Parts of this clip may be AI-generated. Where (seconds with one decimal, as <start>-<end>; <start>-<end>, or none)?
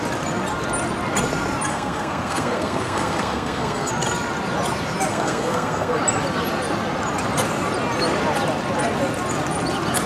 1.7-3.9; 5.1-6.0